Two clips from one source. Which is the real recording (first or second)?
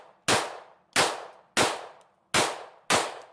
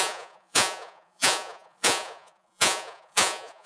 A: first